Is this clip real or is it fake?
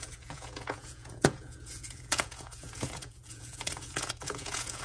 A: fake